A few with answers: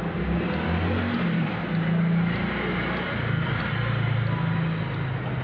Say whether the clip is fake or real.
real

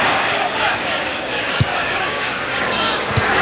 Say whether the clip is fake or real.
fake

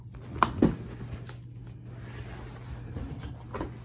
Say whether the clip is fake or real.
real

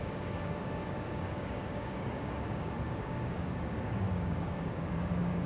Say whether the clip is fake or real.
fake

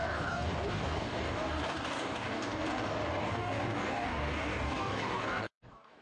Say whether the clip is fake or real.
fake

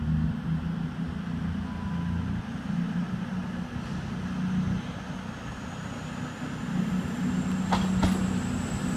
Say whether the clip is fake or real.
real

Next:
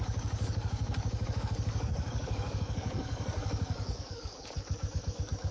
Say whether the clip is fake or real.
fake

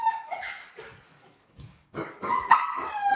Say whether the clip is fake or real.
fake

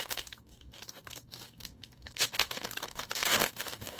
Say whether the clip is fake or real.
fake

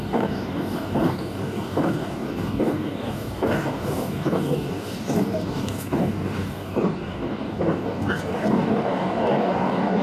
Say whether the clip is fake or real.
fake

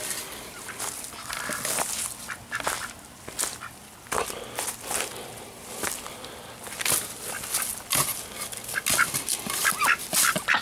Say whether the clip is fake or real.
real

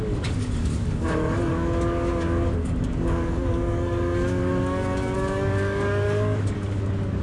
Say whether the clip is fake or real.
fake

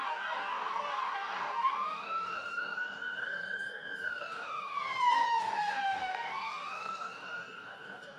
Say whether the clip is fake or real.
fake